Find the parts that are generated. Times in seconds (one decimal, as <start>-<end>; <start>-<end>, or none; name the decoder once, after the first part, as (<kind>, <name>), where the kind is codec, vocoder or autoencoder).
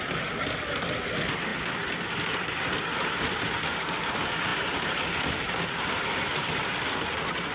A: none